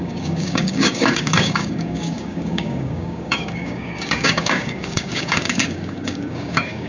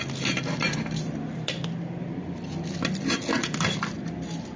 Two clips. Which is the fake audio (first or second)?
first